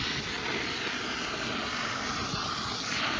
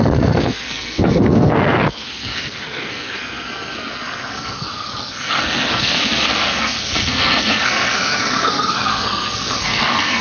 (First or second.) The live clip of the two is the first